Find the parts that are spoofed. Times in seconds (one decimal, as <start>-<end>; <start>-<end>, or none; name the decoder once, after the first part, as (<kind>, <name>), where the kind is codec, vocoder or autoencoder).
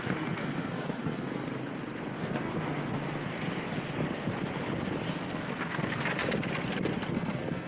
0.0-1.4 (codec, SNAC); 2.1-2.5; 5.3-6.1; 7.1-7.7